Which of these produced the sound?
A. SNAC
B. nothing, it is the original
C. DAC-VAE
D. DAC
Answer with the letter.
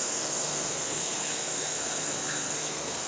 A